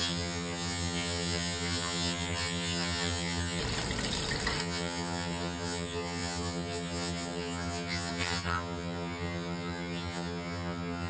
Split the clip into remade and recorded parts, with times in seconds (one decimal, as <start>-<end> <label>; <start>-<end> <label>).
0.0-3.6 remade; 3.6-4.6 recorded; 4.6-11.1 remade